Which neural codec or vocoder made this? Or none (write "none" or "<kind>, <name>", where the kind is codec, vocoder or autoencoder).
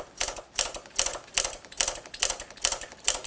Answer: none